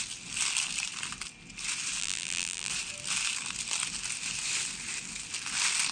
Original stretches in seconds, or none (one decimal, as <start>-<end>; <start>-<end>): 0.0-2.0; 2.7-5.9